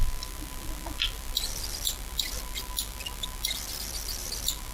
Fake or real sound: fake